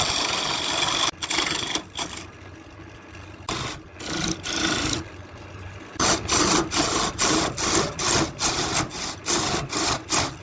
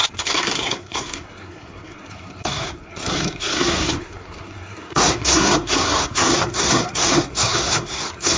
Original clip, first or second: first